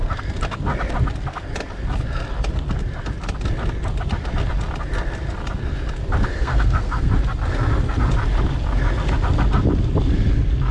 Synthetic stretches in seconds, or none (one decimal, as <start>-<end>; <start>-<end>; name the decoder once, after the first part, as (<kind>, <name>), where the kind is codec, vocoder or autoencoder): 6.3-7.1 (codec, SNAC)

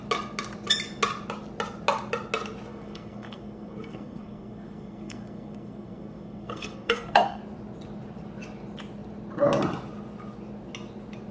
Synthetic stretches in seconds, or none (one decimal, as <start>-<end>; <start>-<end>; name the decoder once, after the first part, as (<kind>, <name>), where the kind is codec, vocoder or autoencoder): 2.7-7.4 (codec, SNAC)